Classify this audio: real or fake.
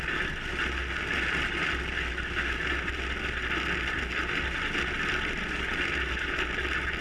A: real